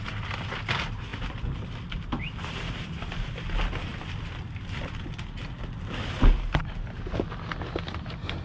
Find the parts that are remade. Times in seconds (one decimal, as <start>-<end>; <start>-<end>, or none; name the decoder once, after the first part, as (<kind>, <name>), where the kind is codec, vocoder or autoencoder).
1.1-3.3 (vocoder, BigVGAN v2)